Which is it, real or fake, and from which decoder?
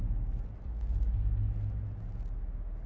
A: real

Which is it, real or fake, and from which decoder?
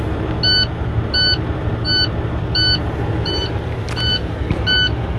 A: real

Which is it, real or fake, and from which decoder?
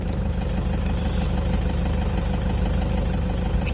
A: real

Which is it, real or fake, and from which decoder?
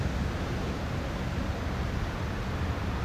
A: real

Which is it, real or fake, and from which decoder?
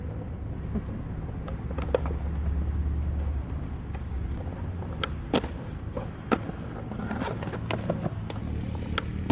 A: real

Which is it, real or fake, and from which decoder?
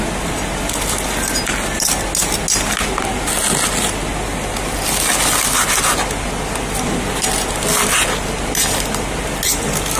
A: real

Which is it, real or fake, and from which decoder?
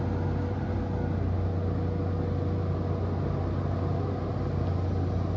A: real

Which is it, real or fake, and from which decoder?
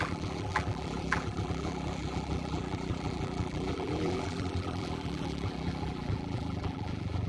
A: fake, vocoder, BigVGAN v2